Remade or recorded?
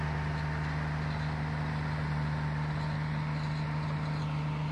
recorded